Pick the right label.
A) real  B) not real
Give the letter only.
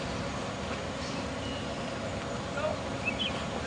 A